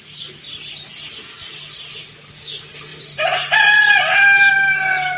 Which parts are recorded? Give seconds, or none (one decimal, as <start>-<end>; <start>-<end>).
0.0-2.9; 4.5-5.2